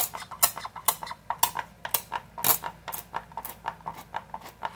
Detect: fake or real real